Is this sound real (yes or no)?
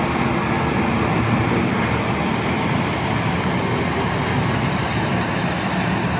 yes